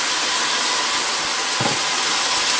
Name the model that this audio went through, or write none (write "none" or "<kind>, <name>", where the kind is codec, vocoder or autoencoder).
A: none